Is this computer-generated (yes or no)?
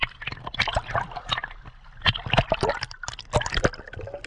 no